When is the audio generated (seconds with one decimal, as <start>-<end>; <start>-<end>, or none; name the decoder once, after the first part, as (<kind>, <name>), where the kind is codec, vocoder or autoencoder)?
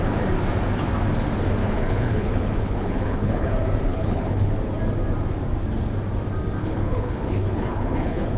1.6-3.5 (codec, HILCodec); 3.9-4.5; 6.6-8.4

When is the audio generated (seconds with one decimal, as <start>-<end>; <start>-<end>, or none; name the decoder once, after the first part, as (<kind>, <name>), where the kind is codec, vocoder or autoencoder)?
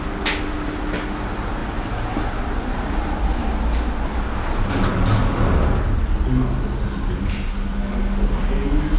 none